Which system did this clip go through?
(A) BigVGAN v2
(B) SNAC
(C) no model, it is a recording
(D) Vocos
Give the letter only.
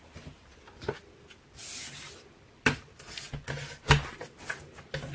A